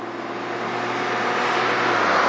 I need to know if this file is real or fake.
real